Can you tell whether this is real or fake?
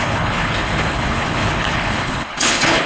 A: fake